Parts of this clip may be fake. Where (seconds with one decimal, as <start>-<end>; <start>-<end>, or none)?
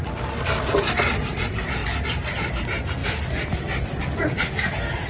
none